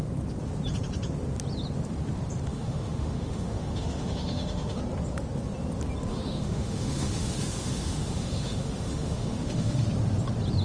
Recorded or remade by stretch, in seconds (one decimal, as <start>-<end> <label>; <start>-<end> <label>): 0.0-2.5 recorded; 2.5-4.8 remade; 4.8-6.1 recorded; 6.1-9.9 remade; 9.9-10.6 recorded